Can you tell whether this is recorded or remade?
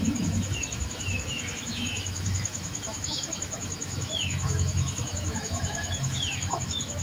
remade